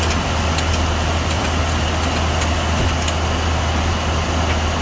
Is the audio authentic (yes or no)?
yes